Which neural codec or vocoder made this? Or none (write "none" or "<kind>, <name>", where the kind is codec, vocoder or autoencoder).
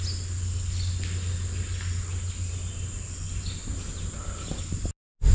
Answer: none